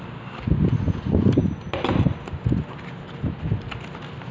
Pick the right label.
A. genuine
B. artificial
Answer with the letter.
A